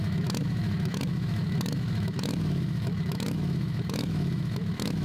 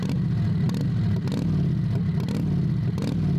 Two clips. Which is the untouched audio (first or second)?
second